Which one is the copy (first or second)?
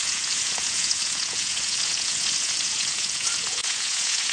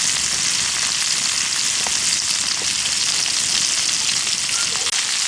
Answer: first